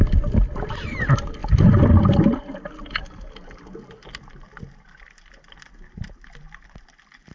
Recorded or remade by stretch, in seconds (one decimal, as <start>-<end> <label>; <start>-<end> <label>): 0.0-7.3 recorded